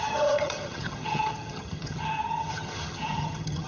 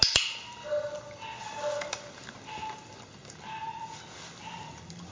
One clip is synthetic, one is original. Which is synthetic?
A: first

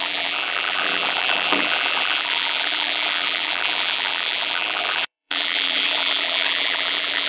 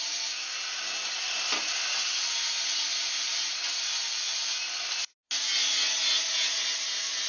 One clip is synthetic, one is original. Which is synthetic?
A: first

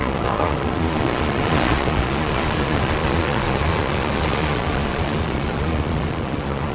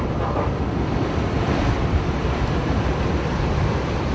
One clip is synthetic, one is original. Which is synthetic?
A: first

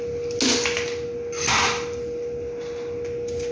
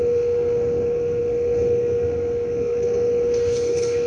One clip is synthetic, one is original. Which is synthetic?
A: second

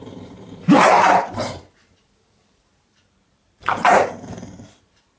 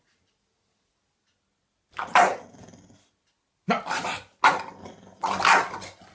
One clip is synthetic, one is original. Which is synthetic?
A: first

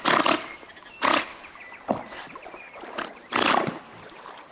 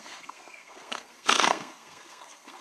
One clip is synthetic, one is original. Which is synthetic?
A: second